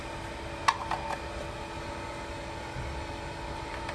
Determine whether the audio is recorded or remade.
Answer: recorded